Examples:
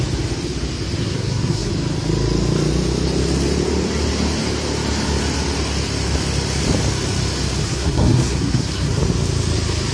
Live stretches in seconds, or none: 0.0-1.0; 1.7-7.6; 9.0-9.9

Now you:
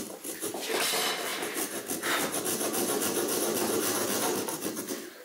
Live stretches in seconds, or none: 0.0-5.2

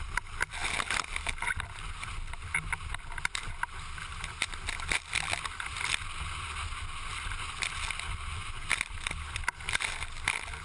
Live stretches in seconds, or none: 0.0-10.6

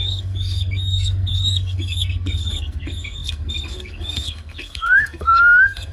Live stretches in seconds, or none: none

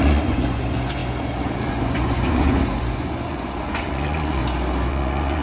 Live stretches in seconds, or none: 4.4-4.9

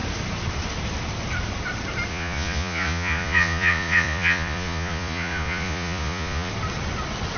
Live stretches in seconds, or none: 0.0-2.1; 6.5-7.4